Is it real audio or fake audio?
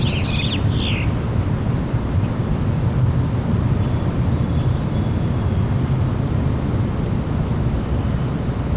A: real